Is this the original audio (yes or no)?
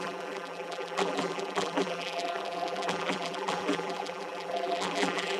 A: no